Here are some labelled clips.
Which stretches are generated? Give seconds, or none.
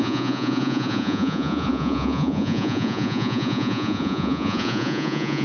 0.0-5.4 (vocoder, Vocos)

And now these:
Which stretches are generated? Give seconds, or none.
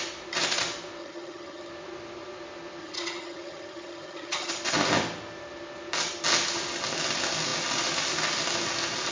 1.0-1.7 (vocoder, HiFi-GAN); 2.8-4.5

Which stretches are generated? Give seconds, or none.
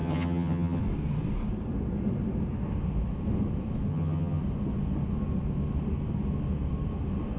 0.0-0.8 (vocoder, HiFi-GAN); 3.9-4.4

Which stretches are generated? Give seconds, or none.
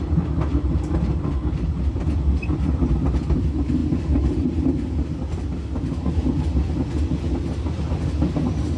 none